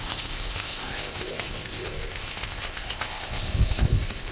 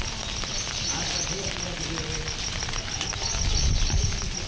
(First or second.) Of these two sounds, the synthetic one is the first